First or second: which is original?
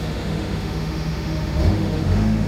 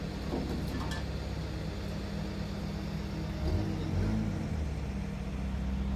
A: second